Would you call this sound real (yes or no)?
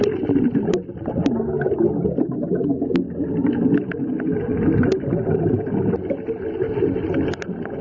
yes